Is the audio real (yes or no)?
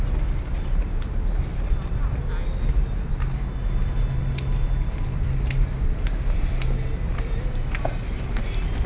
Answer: yes